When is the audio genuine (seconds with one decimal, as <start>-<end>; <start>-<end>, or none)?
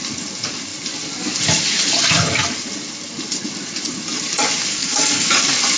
0.0-4.7; 5.3-5.8